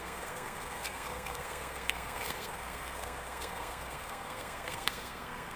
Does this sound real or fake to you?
fake